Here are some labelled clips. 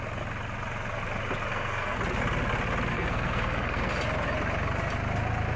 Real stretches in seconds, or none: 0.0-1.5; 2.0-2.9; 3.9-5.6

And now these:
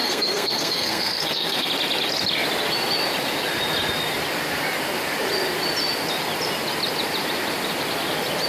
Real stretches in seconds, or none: 1.7-8.5

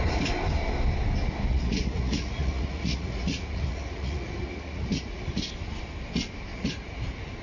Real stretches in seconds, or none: 0.0-1.5; 5.5-6.5; 7.0-7.4

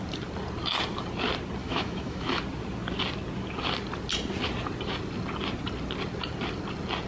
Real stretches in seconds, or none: 0.0-1.6; 2.4-7.1

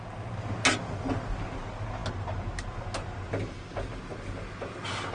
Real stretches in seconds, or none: 0.0-5.1